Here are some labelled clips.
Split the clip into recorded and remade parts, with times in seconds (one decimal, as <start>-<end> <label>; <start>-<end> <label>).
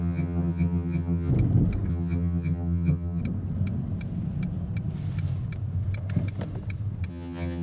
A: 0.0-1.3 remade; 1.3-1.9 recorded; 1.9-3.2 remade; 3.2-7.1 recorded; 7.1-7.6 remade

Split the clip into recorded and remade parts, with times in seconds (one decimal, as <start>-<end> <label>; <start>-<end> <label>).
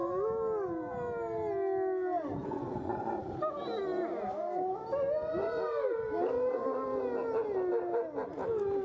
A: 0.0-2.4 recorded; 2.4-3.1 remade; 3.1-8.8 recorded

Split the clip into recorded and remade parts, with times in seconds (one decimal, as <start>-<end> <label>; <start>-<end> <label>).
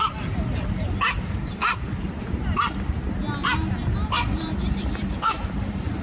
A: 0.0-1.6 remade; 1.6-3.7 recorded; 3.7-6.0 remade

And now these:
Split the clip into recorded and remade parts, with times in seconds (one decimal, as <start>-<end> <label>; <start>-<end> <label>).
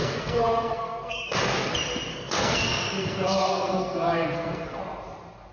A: 0.0-1.7 remade; 1.7-2.1 recorded; 2.1-4.8 remade; 4.8-5.5 recorded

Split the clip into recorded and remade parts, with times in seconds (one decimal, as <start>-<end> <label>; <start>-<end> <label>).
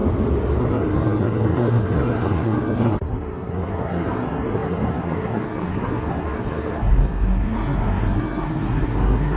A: 0.0-0.6 recorded; 0.6-9.4 remade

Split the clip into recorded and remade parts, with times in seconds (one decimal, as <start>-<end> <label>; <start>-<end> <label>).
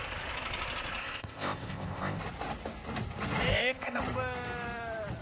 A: 0.0-1.0 recorded; 1.0-2.2 remade; 2.2-3.5 recorded; 3.5-4.0 remade; 4.0-5.2 recorded